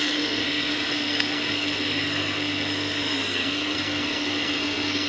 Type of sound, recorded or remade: remade